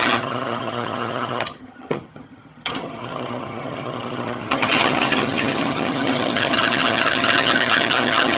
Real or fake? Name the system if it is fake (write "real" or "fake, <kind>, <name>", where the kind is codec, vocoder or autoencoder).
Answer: fake, vocoder, HiFi-GAN